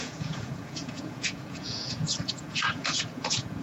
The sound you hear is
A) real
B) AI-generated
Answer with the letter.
B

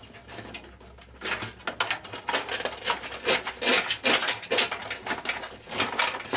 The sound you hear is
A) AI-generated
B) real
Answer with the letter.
B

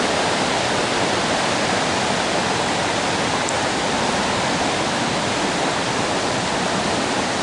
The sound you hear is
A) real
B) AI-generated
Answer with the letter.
A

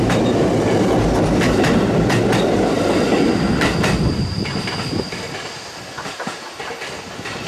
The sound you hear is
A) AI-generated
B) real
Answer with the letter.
B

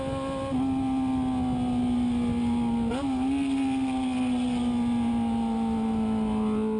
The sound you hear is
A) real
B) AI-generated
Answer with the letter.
A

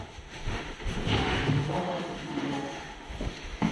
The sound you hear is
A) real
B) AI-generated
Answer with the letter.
B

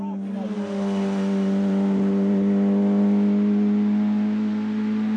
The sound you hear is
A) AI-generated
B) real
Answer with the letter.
B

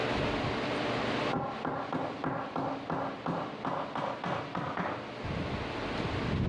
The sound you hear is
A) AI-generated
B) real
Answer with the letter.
B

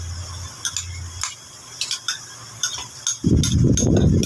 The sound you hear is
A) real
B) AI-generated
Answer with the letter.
A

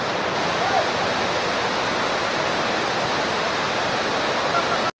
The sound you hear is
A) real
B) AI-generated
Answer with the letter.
A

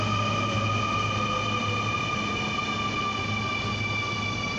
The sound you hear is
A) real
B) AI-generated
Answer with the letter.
A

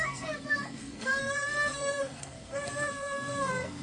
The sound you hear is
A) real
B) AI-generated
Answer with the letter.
B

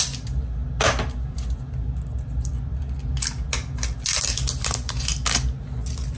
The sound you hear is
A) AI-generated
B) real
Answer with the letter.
B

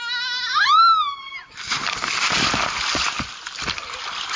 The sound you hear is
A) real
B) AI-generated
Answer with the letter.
A